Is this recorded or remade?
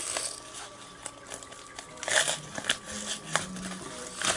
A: recorded